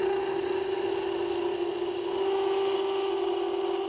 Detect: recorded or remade recorded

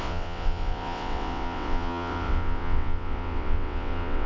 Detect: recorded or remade remade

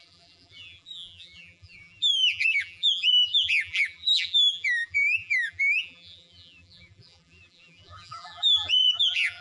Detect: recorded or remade remade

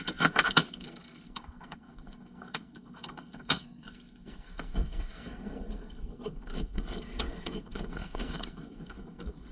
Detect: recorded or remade remade